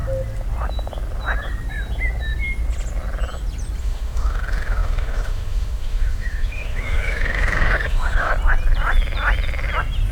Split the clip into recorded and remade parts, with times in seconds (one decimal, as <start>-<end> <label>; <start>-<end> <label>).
0.0-3.8 recorded; 3.8-8.3 remade; 8.3-10.1 recorded